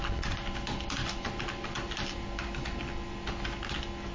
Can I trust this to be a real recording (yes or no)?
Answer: yes